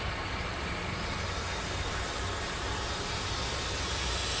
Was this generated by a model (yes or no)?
no